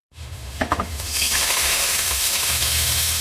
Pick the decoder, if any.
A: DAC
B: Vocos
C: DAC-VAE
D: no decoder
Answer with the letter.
C